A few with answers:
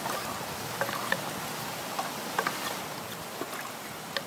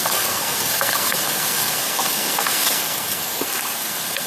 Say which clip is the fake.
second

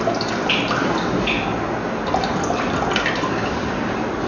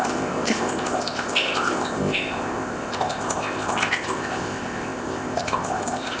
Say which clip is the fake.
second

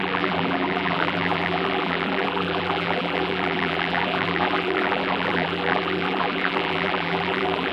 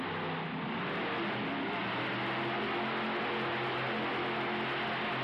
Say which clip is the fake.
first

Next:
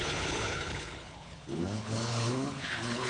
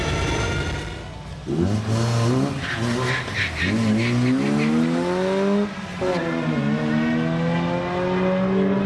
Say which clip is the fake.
first